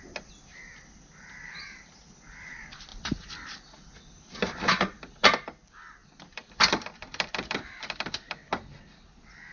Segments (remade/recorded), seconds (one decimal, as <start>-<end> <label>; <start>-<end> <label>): 0.0-2.9 recorded; 2.9-3.6 remade; 3.6-6.0 recorded; 6.0-8.5 remade; 8.5-9.5 recorded